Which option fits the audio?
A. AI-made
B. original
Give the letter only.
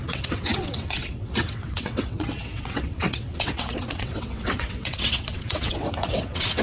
A